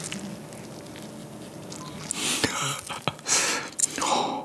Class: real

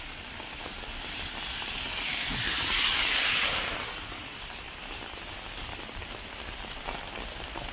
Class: real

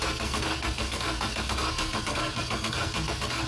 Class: fake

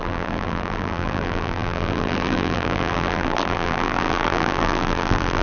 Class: fake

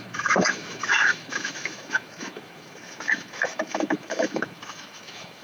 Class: fake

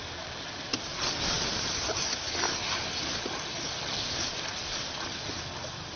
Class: real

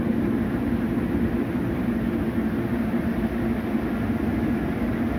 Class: real